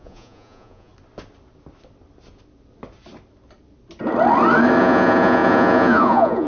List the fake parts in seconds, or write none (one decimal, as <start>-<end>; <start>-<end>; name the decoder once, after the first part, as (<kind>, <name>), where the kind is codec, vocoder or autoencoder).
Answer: 0.0-0.9 (vocoder, Vocos); 4.8-6.5